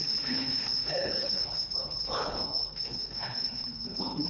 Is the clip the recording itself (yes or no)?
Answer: no